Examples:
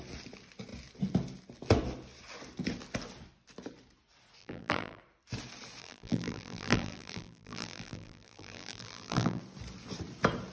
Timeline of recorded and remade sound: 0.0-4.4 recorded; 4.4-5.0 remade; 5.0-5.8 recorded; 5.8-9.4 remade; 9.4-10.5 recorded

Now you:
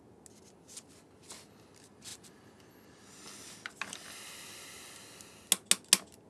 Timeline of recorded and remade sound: 0.0-6.3 recorded

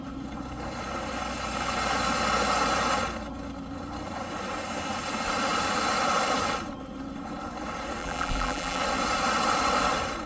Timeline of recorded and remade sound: 0.0-8.0 recorded; 8.0-8.8 remade; 8.8-10.3 recorded

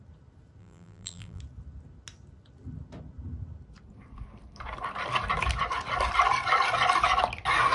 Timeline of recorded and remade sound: 0.0-0.6 recorded; 0.6-1.4 remade; 1.4-7.7 recorded

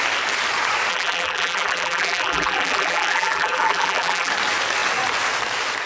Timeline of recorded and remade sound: 0.0-0.9 recorded; 0.9-4.3 remade; 4.3-5.9 recorded

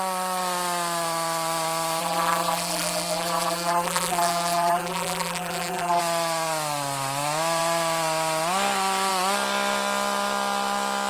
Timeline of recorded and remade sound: 0.0-2.0 recorded; 2.0-6.0 remade; 6.0-11.1 recorded

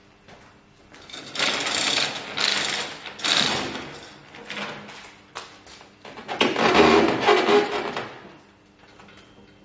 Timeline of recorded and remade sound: 0.0-9.6 recorded